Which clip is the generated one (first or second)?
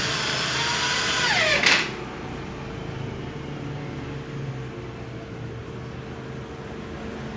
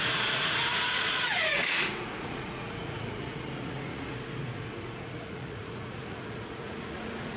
second